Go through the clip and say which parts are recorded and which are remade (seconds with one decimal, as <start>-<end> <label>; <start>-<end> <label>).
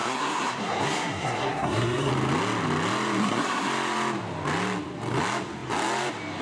0.0-2.1 remade; 2.1-3.2 recorded; 3.2-3.7 remade; 3.7-6.4 recorded